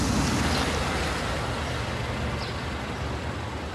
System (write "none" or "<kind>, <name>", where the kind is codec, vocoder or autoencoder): none